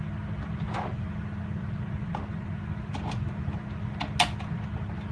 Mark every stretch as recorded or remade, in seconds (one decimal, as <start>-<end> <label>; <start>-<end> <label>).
0.0-5.1 recorded

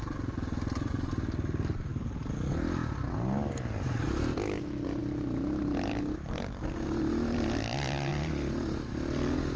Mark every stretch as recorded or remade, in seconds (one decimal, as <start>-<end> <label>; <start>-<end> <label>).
0.0-9.6 recorded

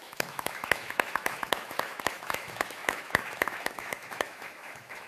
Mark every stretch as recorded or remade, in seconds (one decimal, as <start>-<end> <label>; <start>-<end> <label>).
0.0-5.1 remade

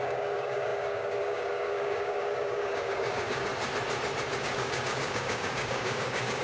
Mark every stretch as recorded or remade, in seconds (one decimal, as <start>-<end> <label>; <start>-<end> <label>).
0.0-3.5 remade; 3.5-4.4 recorded; 4.4-6.4 remade

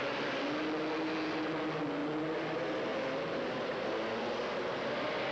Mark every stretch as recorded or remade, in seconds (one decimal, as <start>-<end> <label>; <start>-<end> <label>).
0.0-5.3 recorded

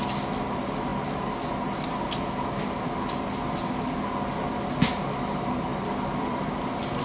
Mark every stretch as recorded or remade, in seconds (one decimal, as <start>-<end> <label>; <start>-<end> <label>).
0.0-5.7 recorded; 5.7-6.4 remade; 6.4-7.0 recorded

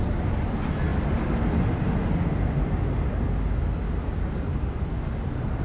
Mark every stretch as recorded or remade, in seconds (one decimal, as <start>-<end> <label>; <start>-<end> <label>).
0.0-5.6 recorded

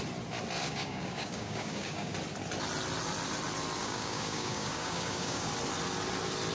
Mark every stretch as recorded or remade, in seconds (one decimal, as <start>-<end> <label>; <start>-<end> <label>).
0.0-0.6 recorded; 0.6-2.1 remade; 2.1-3.8 recorded; 3.8-5.5 remade; 5.5-6.5 recorded